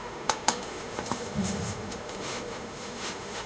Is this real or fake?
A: fake